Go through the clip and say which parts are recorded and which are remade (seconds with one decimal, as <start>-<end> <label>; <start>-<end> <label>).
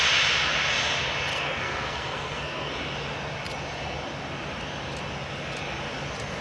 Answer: 0.0-1.3 recorded; 1.3-2.7 remade; 2.7-6.4 recorded